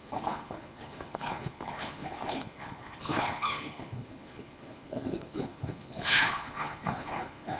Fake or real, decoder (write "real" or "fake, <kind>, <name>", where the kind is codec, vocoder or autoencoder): fake, codec, HILCodec